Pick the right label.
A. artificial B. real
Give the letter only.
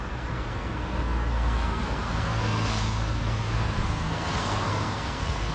A